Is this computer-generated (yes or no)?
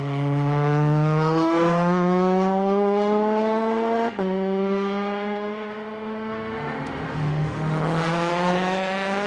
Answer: yes